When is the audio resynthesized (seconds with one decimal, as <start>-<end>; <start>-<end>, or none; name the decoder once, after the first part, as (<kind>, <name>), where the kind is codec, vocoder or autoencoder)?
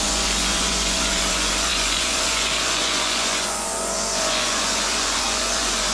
0.0-5.9 (vocoder, Vocos)